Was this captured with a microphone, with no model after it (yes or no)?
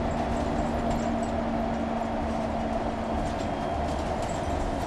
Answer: yes